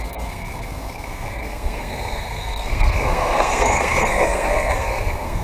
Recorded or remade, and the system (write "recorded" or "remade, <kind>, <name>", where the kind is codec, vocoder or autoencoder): remade, codec, SNAC